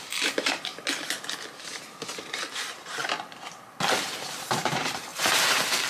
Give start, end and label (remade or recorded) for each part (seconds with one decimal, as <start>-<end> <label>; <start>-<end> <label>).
0.0-0.7 remade; 0.7-2.5 recorded; 2.5-3.0 remade; 3.0-4.0 recorded; 4.0-5.9 remade